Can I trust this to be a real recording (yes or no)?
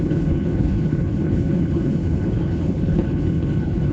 no